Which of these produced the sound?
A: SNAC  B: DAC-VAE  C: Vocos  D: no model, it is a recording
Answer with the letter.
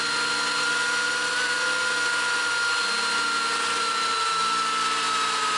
D